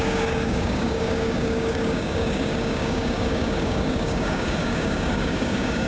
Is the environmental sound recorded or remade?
remade